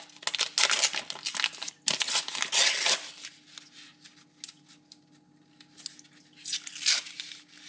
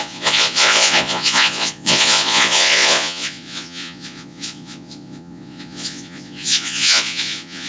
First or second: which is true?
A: first